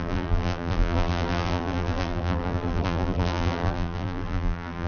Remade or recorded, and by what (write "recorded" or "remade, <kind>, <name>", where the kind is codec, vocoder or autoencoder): remade, vocoder, BigVGAN v2